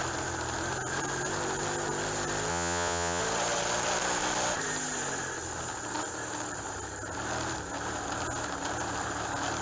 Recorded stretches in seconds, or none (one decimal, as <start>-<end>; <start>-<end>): 0.0-2.5; 3.2-9.6